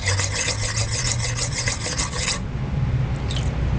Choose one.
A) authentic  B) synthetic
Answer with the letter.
A